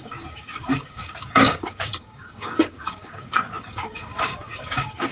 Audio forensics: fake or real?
fake